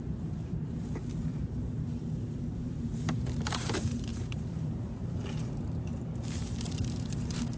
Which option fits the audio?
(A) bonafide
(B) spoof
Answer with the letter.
B